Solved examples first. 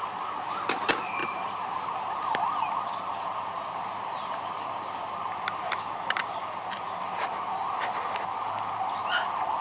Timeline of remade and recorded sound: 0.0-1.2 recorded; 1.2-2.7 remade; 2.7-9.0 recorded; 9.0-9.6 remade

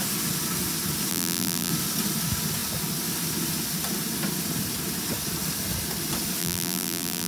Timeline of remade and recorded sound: 0.0-1.1 recorded; 1.1-1.7 remade; 1.7-6.4 recorded; 6.4-7.3 remade

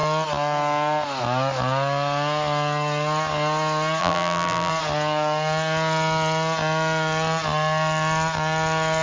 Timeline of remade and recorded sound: 0.0-4.0 recorded; 4.0-4.7 remade; 4.7-9.0 recorded